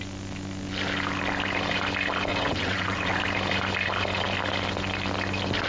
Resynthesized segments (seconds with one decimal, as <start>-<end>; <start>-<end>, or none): 2.3-3.2

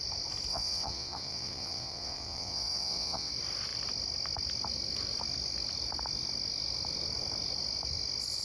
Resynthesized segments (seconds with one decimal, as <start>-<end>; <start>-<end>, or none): 0.5-3.3

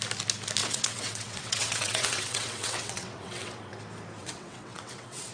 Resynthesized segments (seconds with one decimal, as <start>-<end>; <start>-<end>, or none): 0.6-3.8; 4.2-5.3

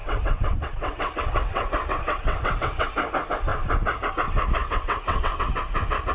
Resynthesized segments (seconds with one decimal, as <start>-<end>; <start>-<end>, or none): 0.0-2.9; 4.6-5.4

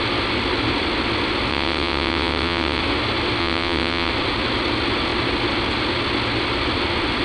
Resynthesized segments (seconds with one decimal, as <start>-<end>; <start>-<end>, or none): 1.5-2.8; 3.4-4.1

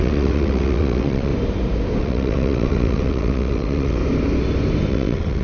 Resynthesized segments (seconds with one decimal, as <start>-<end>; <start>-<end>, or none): 0.0-1.3; 2.0-4.0; 4.9-5.4